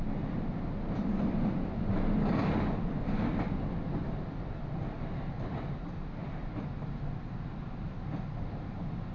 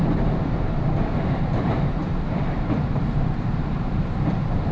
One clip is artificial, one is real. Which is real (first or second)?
first